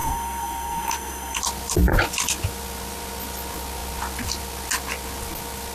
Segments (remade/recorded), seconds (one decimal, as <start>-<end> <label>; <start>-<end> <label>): 0.0-1.4 remade; 1.4-5.7 recorded